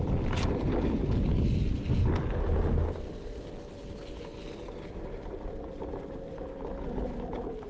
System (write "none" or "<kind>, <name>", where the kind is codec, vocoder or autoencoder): none